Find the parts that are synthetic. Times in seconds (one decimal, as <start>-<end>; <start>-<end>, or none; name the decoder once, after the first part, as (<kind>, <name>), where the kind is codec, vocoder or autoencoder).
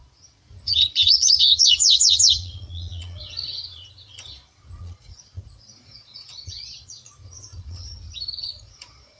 0.0-9.2 (vocoder, Vocos)